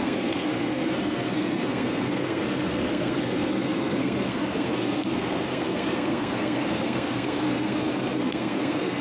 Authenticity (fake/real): fake